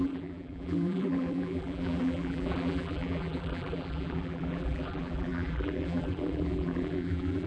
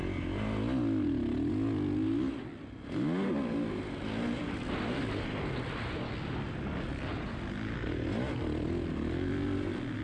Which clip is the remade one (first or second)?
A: first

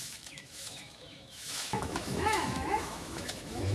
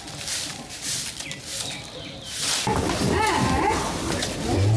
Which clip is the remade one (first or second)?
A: first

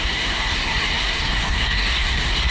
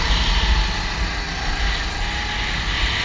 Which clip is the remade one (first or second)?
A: first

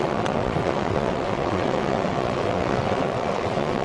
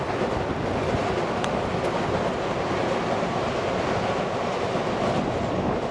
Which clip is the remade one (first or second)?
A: first